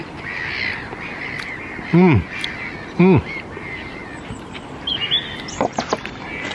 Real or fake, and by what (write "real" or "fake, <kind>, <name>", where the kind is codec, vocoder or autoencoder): real